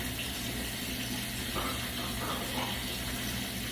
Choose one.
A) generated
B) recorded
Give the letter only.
B